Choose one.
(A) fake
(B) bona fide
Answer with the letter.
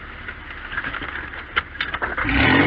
B